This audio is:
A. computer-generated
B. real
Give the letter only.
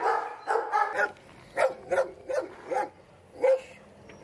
B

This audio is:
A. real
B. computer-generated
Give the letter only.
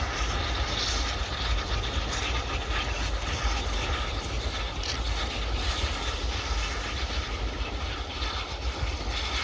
A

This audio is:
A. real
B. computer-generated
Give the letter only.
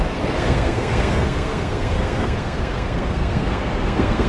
B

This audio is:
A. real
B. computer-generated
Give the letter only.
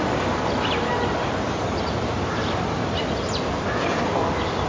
A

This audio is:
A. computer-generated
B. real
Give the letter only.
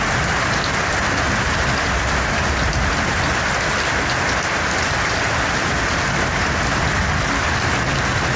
B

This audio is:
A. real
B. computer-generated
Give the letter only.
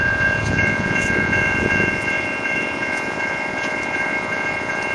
B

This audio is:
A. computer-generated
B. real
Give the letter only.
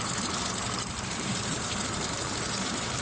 A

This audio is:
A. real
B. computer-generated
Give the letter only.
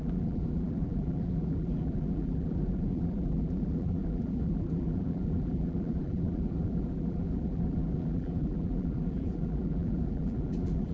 B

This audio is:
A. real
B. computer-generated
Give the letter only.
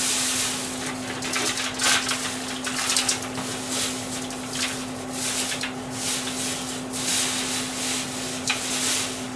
A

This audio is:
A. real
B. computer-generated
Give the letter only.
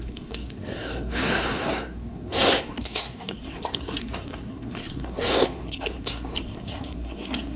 B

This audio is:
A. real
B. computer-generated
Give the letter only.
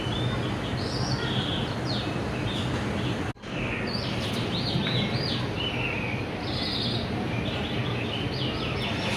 A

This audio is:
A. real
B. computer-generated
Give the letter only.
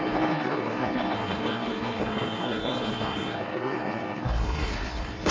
B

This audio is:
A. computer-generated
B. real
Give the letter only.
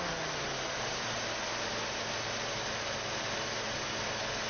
B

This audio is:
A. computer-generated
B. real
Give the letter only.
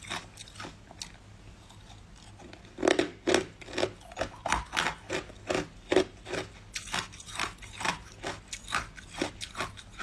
B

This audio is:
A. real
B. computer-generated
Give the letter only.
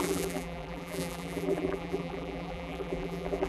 B